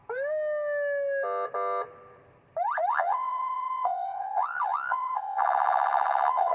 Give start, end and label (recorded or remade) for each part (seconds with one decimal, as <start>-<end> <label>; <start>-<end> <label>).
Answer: 0.0-2.9 recorded; 2.9-6.5 remade